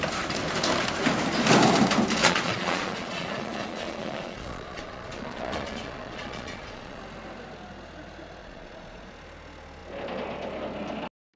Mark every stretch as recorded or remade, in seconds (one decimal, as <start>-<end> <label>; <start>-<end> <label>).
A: 0.0-2.2 recorded; 2.2-7.0 remade; 7.0-8.4 recorded; 8.4-9.1 remade; 9.1-11.4 recorded